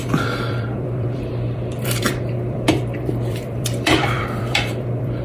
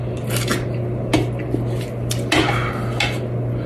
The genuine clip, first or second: second